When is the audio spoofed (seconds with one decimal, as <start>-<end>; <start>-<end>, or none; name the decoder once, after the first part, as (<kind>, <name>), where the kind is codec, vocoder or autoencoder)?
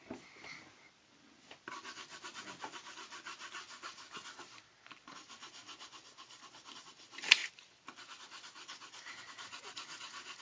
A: none